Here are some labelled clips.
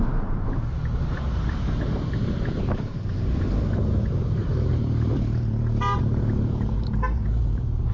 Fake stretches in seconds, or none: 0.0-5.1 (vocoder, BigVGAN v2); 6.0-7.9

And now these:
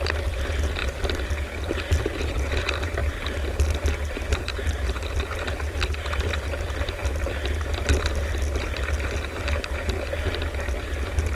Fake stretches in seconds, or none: none

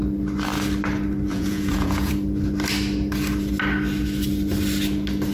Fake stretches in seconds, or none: 1.3-2.1 (vocoder, Vocos)

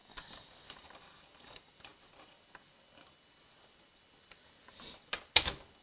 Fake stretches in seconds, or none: 0.0-1.9 (vocoder, BigVGAN v2)

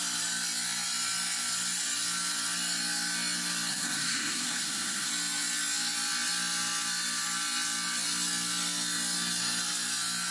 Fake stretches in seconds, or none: 3.7-5.1 (codec, SNAC)

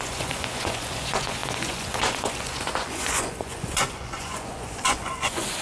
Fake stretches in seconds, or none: 0.0-5.6 (vocoder, Vocos)

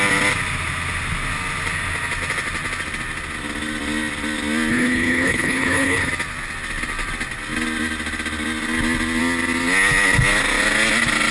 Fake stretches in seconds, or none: 4.7-6.1 (codec, HILCodec)